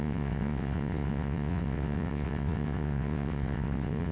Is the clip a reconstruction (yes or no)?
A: yes